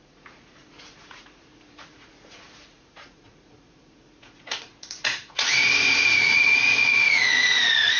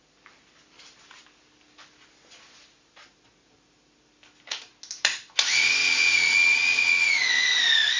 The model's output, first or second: first